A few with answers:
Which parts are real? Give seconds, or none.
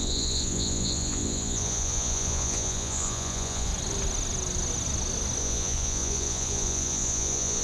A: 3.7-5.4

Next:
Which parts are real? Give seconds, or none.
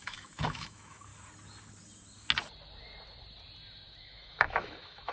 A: 1.1-4.0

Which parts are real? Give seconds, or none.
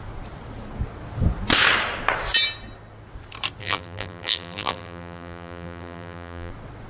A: 0.0-3.6; 6.5-6.9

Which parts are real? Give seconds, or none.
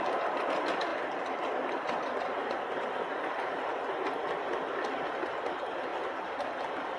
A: 5.9-6.5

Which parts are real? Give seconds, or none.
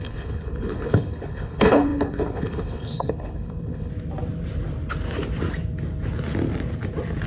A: 3.9-7.3